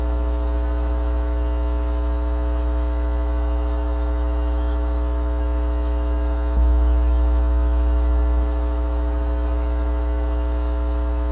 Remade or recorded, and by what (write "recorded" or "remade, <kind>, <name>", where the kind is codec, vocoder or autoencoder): remade, autoencoder, DAC-VAE